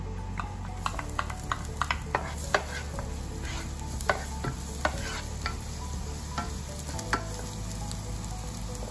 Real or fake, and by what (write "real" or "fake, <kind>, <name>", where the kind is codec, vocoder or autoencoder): real